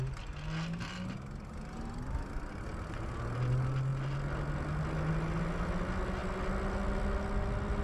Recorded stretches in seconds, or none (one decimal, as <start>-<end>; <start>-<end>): 0.0-7.8